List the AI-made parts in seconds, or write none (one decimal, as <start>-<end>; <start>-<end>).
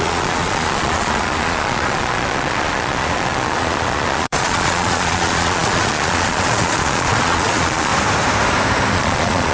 0.0-7.9; 8.9-9.5